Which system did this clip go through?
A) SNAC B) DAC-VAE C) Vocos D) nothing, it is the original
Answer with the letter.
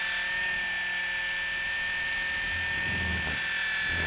D